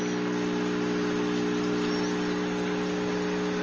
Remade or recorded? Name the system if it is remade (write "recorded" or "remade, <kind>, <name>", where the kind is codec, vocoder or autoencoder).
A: recorded